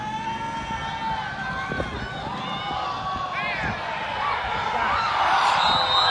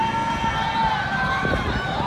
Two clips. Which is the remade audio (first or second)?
second